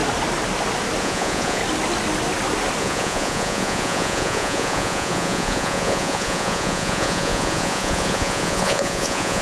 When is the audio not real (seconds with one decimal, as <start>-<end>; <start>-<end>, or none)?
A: 1.0-1.6; 2.8-9.4